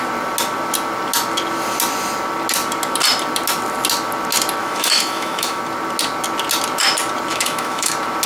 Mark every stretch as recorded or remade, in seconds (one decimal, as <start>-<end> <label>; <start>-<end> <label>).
0.0-4.6 recorded; 4.6-5.6 remade; 5.6-7.3 recorded; 7.3-7.9 remade; 7.9-8.3 recorded